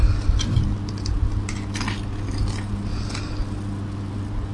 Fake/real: real